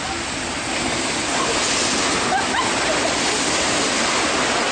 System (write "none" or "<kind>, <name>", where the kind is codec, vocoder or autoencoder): none